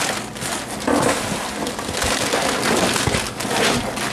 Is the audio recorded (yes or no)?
yes